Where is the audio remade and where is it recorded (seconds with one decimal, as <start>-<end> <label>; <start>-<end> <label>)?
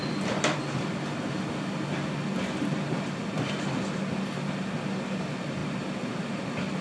0.0-6.8 recorded